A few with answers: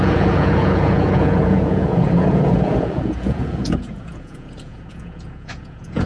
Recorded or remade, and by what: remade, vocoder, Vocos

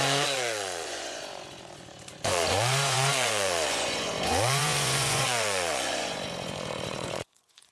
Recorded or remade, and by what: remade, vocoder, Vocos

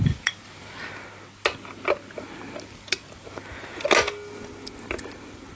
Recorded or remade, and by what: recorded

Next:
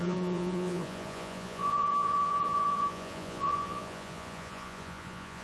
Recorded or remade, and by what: remade, vocoder, Vocos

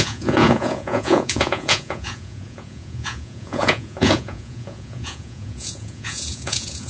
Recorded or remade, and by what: remade, vocoder, Vocos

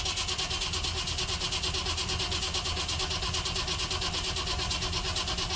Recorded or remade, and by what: recorded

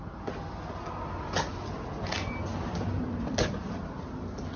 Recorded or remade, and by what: recorded